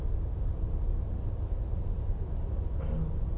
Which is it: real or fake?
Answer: real